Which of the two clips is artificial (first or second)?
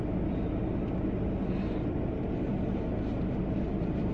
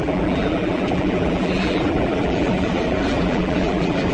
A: second